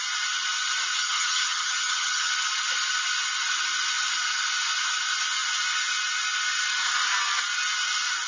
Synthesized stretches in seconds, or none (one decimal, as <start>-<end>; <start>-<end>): 0.9-2.3